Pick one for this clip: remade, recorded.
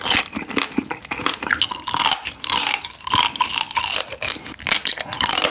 recorded